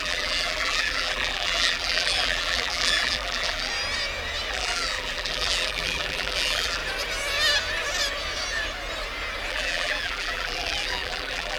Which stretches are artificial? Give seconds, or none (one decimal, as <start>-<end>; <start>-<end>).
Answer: 0.0-3.7; 4.5-6.8; 9.5-11.6